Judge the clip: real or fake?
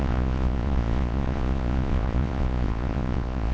fake